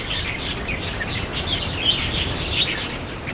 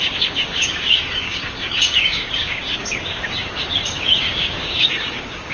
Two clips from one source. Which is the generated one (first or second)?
second